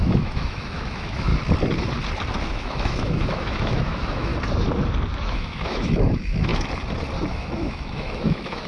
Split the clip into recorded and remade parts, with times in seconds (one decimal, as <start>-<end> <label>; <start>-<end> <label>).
0.0-1.3 remade; 1.3-2.4 recorded; 2.4-4.3 remade; 4.3-5.2 recorded; 5.2-6.5 remade; 6.5-7.3 recorded; 7.3-8.7 remade